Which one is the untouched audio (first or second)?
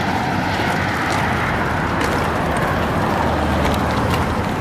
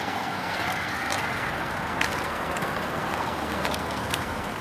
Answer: first